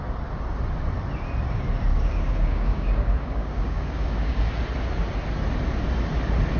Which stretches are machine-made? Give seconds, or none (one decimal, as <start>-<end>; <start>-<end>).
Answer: 1.9-4.6